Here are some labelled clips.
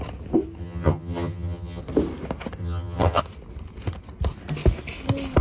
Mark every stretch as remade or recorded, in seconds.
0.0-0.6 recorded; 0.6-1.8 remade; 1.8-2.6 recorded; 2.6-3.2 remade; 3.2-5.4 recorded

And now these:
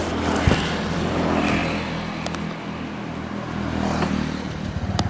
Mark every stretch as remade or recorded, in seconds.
0.0-5.1 recorded

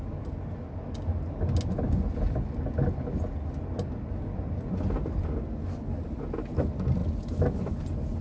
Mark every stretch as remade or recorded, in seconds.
0.0-8.2 recorded